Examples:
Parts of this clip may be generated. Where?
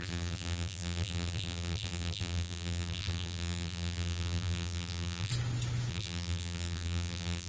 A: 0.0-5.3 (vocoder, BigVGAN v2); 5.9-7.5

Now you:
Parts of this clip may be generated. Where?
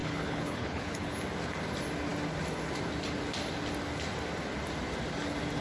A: 0.0-1.2 (codec, HILCodec)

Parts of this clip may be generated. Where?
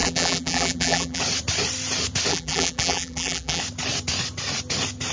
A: 0.0-1.2 (vocoder, BigVGAN v2); 2.3-3.6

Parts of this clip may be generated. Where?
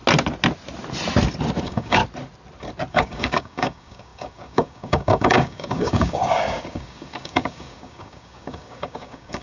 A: 1.6-2.0 (codec, DAC); 2.9-9.4